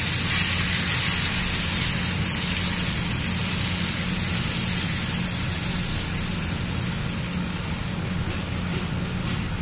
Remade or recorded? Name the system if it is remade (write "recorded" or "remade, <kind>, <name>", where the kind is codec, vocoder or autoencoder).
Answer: recorded